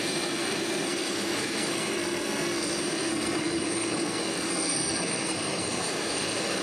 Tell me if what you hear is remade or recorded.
remade